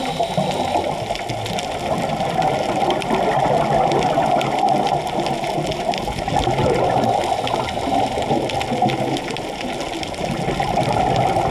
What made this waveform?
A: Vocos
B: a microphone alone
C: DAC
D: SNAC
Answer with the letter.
B